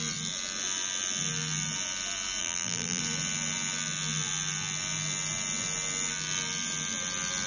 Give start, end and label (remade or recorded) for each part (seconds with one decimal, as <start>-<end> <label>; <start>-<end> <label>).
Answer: 0.0-2.4 recorded; 2.4-3.0 remade; 3.0-7.5 recorded